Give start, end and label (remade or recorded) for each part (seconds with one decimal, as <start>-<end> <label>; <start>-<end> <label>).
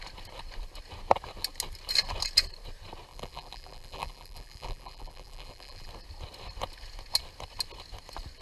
0.0-3.1 recorded; 3.1-5.9 remade; 5.9-8.4 recorded